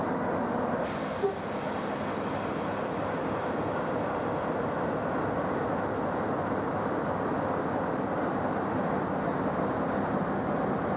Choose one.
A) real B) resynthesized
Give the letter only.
A